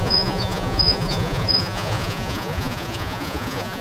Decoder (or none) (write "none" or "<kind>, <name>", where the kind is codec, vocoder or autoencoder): vocoder, Vocos